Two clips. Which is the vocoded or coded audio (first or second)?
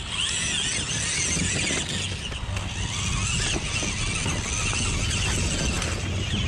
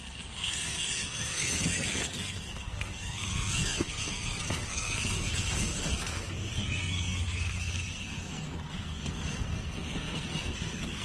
second